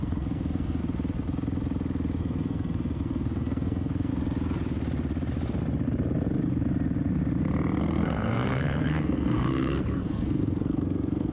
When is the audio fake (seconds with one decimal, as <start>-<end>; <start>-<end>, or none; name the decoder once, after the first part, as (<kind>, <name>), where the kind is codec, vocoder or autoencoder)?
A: 0.0-0.8 (codec, SNAC); 2.2-4.1; 7.8-11.3